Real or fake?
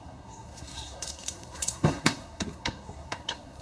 fake